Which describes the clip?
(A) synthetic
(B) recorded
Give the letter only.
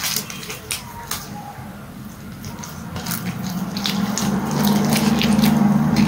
B